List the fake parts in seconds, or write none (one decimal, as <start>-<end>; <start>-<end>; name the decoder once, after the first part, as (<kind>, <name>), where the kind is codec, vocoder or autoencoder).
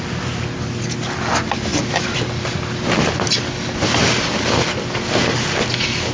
none